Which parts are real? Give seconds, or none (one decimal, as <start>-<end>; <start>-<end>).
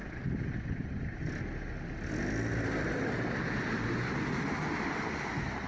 0.0-5.7